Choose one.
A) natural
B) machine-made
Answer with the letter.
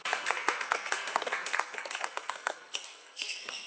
B